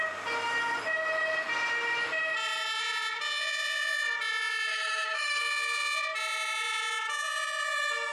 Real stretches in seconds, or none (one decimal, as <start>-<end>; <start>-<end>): 0.0-4.7; 5.4-8.1